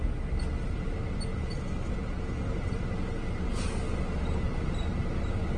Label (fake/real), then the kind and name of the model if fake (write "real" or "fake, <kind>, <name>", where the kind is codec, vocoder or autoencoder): real